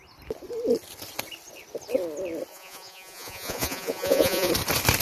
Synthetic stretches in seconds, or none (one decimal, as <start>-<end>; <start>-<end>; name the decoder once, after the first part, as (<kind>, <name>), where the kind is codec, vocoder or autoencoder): 2.5-4.5 (vocoder, Vocos)